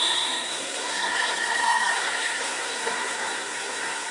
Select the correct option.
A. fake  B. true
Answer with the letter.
A